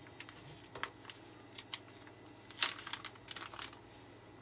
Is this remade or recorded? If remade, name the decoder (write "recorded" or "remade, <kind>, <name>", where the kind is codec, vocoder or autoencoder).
recorded